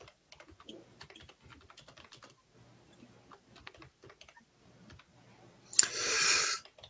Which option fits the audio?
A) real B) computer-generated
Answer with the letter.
A